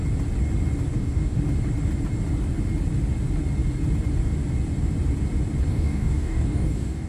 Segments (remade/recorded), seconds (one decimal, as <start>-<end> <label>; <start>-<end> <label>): 0.0-0.9 recorded; 0.9-1.4 remade; 1.4-5.7 recorded; 5.7-7.1 remade